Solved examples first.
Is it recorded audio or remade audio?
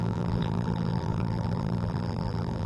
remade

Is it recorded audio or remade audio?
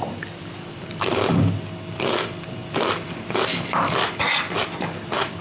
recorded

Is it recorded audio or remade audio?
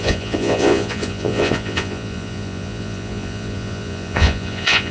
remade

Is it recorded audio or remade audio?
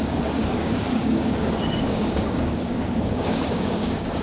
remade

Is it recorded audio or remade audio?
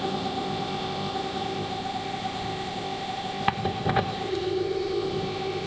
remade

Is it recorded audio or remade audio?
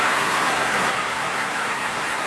remade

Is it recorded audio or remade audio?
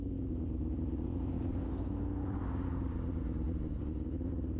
recorded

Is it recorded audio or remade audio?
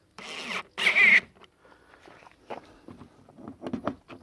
recorded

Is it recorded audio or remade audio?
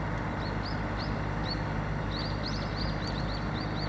recorded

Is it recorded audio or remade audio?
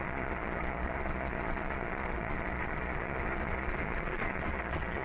remade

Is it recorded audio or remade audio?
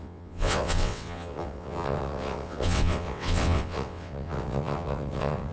remade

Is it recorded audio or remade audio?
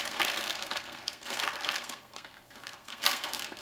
remade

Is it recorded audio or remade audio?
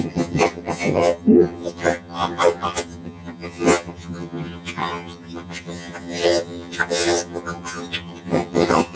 remade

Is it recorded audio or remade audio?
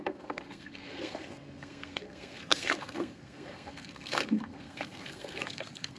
remade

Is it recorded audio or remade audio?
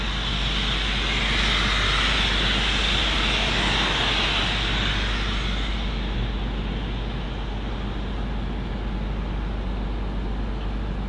recorded